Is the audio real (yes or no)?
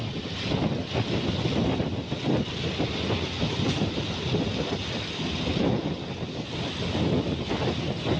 yes